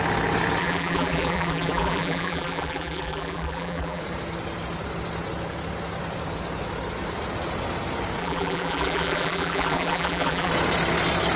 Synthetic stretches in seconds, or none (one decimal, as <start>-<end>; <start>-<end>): 0.6-4.0; 8.2-10.5